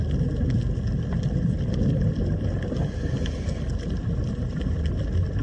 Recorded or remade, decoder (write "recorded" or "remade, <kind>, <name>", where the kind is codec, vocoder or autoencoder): recorded